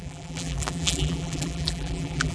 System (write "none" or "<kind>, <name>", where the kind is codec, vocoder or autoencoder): vocoder, BigVGAN v2